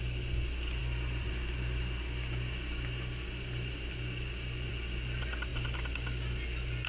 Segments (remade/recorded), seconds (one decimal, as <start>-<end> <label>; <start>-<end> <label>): 0.0-6.9 recorded